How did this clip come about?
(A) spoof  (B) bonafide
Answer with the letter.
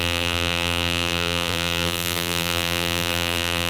A